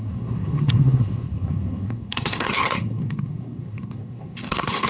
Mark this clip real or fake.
fake